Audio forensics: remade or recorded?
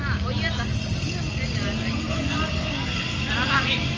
recorded